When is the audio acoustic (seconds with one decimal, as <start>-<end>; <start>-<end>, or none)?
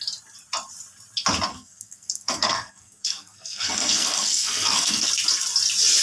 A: 0.0-1.5; 5.1-6.0